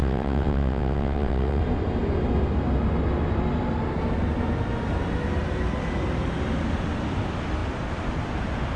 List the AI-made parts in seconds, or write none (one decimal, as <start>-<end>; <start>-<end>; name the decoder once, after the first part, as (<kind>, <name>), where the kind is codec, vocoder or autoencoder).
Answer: 0.0-1.6 (vocoder, WaveNeXt)